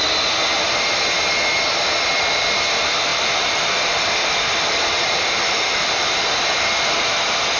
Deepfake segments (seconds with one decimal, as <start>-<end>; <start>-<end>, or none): 3.1-7.1